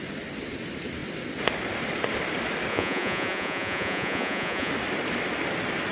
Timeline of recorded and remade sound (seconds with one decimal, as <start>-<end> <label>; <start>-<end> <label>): 0.0-2.7 recorded; 2.7-4.7 remade; 4.7-5.9 recorded

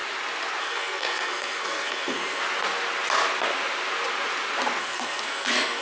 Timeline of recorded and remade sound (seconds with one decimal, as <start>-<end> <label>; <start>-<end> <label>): 0.0-0.6 recorded; 0.6-2.4 remade; 2.4-4.8 recorded; 4.8-5.8 remade

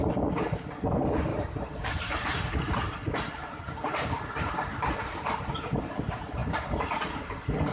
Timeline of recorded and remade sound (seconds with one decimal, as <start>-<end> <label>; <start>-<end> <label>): 0.0-1.3 recorded; 1.3-5.5 remade; 5.5-7.7 recorded

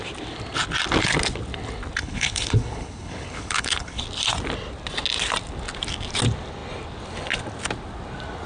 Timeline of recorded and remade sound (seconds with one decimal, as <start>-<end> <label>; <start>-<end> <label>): 0.0-2.0 recorded; 2.0-4.0 remade; 4.0-8.5 recorded

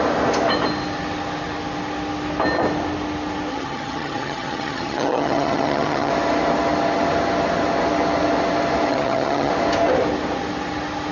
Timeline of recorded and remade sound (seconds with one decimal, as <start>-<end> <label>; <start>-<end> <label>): 0.0-3.5 recorded; 3.5-6.1 remade; 6.1-8.9 recorded; 8.9-9.5 remade; 9.5-11.1 recorded

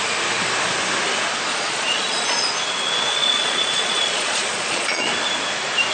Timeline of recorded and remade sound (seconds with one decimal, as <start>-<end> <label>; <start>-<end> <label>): 0.0-1.5 recorded; 1.5-2.5 remade; 2.5-3.1 recorded; 3.1-5.1 remade; 5.1-5.9 recorded

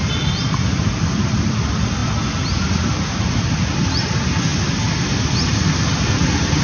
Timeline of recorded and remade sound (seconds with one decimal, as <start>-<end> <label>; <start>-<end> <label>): 0.0-2.0 remade; 2.0-3.2 recorded; 3.2-6.6 remade